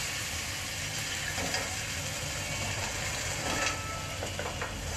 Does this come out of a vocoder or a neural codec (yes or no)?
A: no